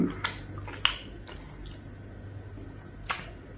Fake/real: real